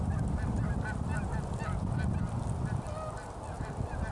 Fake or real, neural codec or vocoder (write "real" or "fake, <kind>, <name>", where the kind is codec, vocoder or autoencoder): real